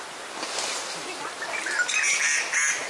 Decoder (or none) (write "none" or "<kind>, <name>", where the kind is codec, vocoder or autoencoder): none